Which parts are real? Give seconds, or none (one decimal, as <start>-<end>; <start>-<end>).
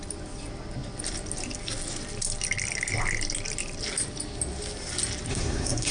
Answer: 0.0-5.3